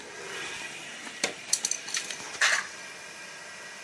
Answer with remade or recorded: recorded